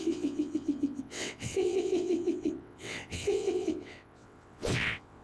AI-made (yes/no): yes